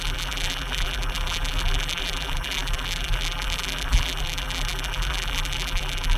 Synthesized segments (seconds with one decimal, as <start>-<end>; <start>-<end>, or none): 0.0-6.2